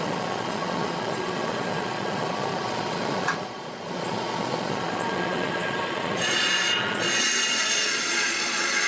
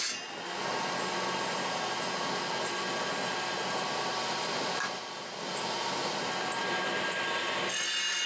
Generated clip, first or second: first